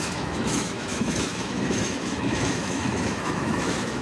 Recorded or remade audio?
remade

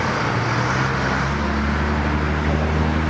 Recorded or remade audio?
recorded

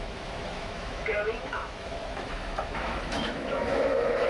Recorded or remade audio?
remade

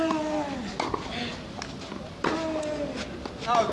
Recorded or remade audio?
recorded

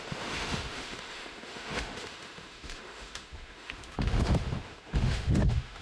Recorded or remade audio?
remade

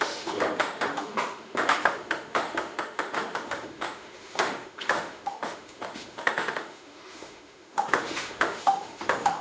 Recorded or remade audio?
remade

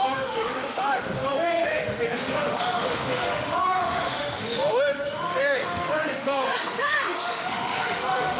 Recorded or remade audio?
remade